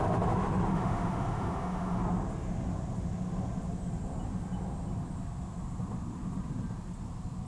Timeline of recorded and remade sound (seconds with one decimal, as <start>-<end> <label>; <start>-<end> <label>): 0.0-0.7 recorded; 0.7-2.0 remade; 2.0-7.5 recorded